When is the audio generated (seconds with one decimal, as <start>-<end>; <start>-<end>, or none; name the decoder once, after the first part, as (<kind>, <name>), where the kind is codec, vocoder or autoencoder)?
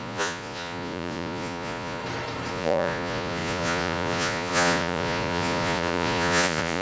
0.0-2.0 (vocoder, Vocos); 2.5-6.8